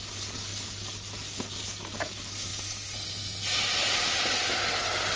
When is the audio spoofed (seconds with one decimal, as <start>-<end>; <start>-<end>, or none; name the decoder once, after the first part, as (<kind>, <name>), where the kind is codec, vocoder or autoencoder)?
none